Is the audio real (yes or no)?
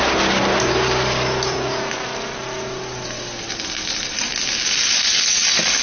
yes